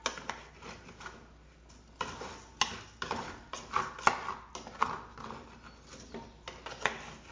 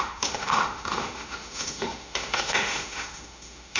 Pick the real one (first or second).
first